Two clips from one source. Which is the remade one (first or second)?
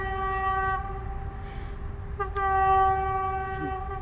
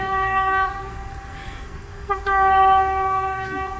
second